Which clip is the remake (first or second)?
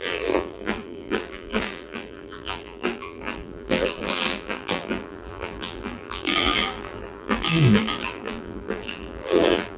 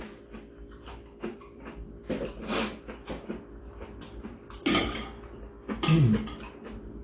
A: first